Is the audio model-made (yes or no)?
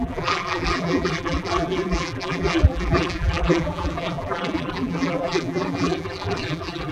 yes